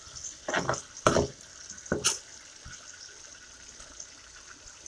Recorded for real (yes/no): yes